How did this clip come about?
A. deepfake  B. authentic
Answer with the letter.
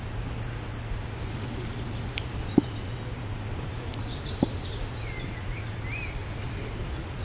B